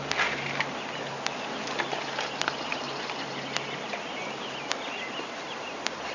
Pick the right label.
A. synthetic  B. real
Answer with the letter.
B